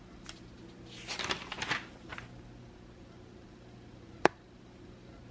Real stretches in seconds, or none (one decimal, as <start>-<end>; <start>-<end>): 0.0-2.1